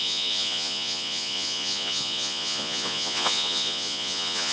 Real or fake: fake